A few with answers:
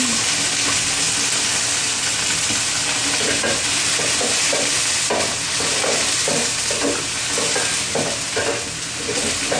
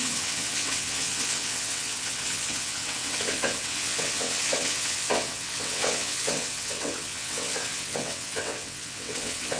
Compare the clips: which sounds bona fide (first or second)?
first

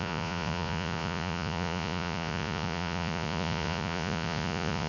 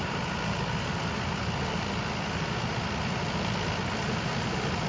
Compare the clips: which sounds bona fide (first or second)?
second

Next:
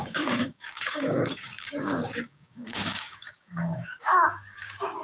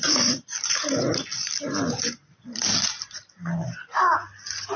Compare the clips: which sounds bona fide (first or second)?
second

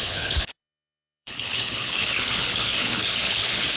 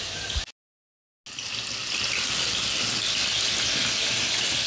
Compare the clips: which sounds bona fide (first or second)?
second